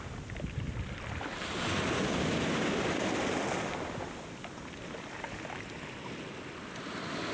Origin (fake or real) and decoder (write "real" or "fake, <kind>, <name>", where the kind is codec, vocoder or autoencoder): real